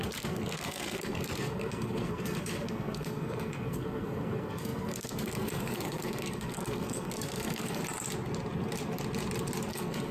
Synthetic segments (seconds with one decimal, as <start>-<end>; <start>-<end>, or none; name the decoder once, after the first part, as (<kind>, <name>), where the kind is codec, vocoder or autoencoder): 0.0-7.8 (codec, SNAC); 9.7-10.1